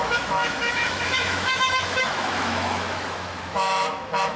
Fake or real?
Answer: fake